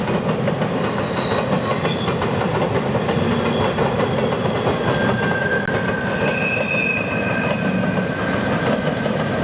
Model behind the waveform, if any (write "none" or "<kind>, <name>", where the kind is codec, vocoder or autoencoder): none